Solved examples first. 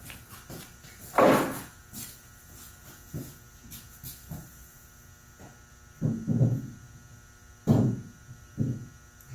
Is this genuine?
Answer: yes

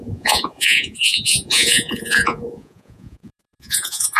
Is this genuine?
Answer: no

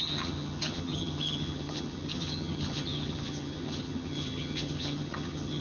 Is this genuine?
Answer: no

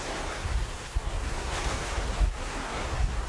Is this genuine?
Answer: no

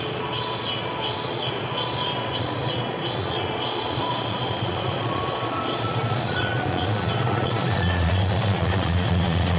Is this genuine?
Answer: no